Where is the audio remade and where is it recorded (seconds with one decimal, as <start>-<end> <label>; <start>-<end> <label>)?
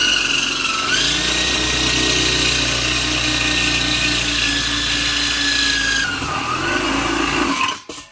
0.0-8.1 recorded